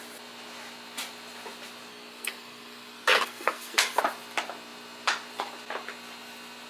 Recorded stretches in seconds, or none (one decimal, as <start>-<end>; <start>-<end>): 0.0-1.9; 4.0-6.7